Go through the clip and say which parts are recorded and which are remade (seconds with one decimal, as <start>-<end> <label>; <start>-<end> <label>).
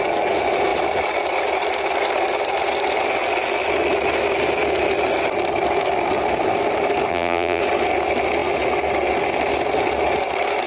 0.0-7.1 recorded; 7.1-7.6 remade; 7.6-10.7 recorded